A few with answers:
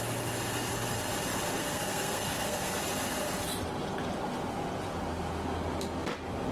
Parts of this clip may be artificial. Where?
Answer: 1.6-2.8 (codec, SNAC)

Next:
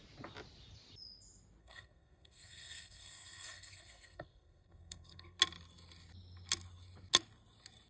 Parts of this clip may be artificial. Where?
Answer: 1.6-5.4 (codec, SNAC)

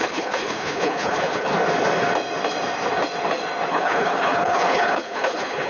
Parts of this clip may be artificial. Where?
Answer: 0.0-1.5 (codec, HILCodec); 3.7-5.7

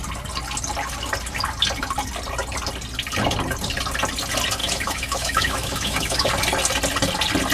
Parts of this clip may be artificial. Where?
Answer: 4.6-6.3 (autoencoder, DAC-VAE)

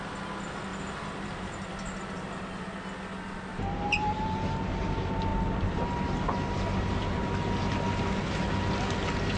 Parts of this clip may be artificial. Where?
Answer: 0.7-1.7 (vocoder, BigVGAN v2); 3.5-4.2

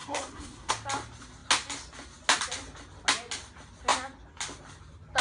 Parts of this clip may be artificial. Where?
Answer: 0.0-0.7 (codec, SNAC)

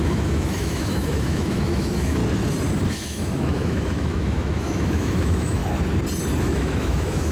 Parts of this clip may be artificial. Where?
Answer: 0.0-2.2 (autoencoder, DAC-VAE); 2.9-5.6; 6.4-7.3